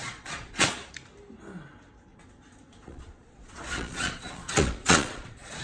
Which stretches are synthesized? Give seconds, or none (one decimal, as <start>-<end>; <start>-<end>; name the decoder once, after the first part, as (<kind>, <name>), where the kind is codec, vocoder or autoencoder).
0.0-0.9 (vocoder, Vocos); 2.1-5.6